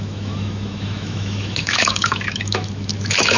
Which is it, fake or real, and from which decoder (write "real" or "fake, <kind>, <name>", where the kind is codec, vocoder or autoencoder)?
fake, autoencoder, DAC-VAE